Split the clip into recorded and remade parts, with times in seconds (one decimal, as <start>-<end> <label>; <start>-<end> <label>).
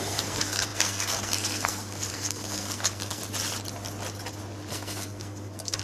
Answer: 0.0-3.2 remade; 3.2-4.7 recorded; 4.7-5.8 remade